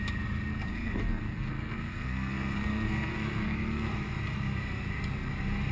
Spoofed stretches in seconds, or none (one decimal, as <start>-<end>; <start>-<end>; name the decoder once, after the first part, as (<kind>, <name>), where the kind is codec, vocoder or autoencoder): 0.5-3.9 (codec, SNAC)